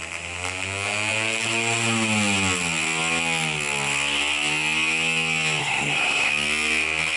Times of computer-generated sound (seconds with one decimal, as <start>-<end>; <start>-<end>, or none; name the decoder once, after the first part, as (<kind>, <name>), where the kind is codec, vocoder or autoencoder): 5.6-6.3 (codec, SNAC)